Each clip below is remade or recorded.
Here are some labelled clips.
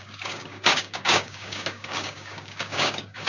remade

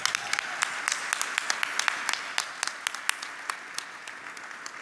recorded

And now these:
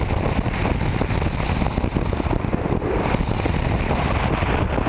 recorded